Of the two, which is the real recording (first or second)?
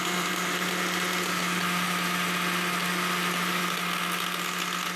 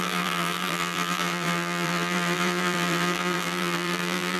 first